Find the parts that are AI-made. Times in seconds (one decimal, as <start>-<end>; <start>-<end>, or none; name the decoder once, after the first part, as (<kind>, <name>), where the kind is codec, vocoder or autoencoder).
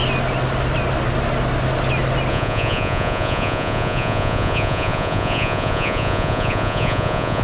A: 2.3-7.4 (vocoder, Vocos)